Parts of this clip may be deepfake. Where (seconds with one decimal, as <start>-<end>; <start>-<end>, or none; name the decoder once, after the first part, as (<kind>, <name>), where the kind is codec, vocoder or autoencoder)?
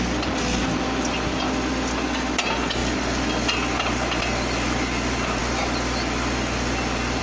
none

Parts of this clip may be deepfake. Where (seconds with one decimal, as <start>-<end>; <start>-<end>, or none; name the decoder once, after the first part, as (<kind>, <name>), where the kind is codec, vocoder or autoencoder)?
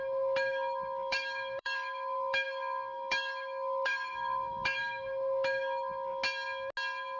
0.0-6.1 (autoencoder, DAC-VAE)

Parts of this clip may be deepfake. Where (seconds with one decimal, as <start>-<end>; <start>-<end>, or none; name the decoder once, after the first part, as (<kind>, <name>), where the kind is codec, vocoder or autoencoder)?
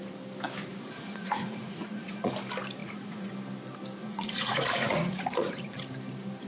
0.7-2.3 (vocoder, Vocos); 2.8-3.3; 4.0-5.8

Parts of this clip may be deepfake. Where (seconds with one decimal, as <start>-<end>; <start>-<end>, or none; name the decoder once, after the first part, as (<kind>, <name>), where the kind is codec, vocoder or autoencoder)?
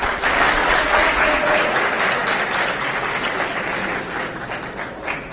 0.6-1.8 (vocoder, Vocos)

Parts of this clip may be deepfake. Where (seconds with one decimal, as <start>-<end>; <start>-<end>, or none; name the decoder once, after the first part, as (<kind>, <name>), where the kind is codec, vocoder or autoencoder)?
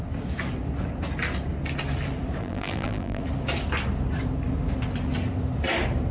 2.4-3.2 (vocoder, BigVGAN v2)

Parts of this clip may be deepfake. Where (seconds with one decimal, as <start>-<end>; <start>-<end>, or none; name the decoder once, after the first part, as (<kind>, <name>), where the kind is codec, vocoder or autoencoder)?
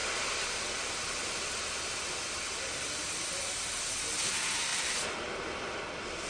none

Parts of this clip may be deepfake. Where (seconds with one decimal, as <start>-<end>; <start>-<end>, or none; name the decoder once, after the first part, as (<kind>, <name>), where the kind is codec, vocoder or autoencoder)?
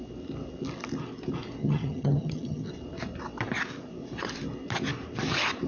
1.6-2.7 (vocoder, HiFi-GAN)